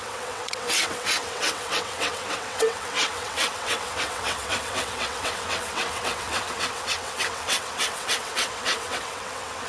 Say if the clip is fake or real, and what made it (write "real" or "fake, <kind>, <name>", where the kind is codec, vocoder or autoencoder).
fake, vocoder, WaveNeXt